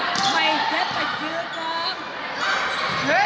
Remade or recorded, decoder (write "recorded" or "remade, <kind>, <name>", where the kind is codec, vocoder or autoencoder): recorded